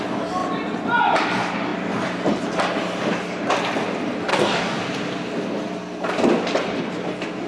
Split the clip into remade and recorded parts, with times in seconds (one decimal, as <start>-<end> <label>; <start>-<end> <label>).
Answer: 0.0-4.3 recorded; 4.3-4.8 remade; 4.8-7.5 recorded